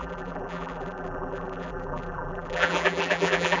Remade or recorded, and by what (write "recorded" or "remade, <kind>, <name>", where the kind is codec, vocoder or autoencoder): remade, vocoder, BigVGAN v2